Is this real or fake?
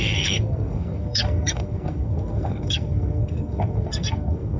fake